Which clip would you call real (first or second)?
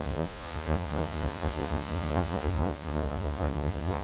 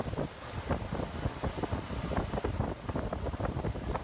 second